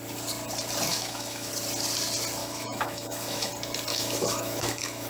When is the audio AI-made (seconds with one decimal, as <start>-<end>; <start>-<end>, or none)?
0.9-1.5; 2.4-3.5; 3.9-5.1